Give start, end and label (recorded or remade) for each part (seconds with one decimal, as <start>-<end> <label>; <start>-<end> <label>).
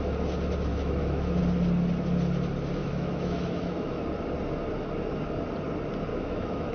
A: 0.0-0.7 recorded; 0.7-1.4 remade; 1.4-2.8 recorded; 2.8-4.0 remade; 4.0-6.1 recorded; 6.1-6.7 remade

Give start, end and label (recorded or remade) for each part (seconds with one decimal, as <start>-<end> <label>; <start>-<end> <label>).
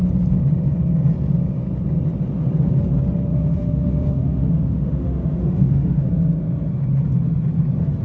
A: 0.0-3.3 recorded; 3.3-6.1 remade; 6.1-8.0 recorded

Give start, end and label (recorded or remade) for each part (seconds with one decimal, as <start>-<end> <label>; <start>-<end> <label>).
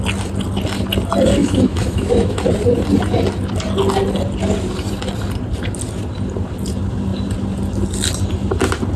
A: 0.0-1.4 recorded; 1.4-2.4 remade; 2.4-9.0 recorded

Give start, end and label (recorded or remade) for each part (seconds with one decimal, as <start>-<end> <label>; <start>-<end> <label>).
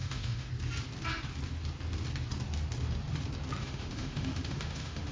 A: 0.0-0.5 remade; 0.5-3.6 recorded; 3.6-5.1 remade